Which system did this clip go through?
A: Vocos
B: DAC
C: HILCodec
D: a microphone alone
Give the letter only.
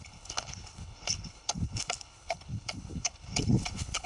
C